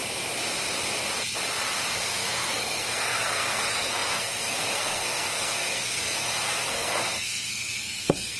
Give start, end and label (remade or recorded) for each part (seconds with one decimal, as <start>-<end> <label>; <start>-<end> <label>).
0.0-1.9 recorded; 1.9-8.4 remade